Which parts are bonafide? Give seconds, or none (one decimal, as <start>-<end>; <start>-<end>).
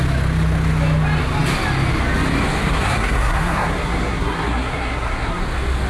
0.0-2.7; 5.4-5.9